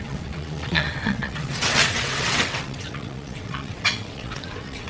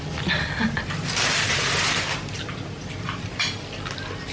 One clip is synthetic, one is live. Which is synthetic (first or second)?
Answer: first